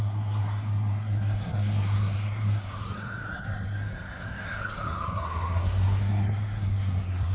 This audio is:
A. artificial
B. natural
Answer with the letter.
A